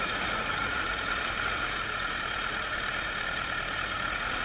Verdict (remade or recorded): remade